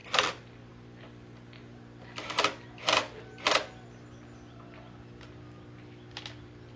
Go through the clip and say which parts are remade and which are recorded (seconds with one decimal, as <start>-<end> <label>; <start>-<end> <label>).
0.0-6.8 recorded